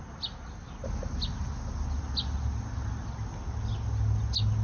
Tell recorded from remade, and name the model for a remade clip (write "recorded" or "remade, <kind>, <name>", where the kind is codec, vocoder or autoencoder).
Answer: recorded